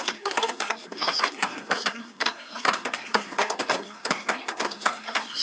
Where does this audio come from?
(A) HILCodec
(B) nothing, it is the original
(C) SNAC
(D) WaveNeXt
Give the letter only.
C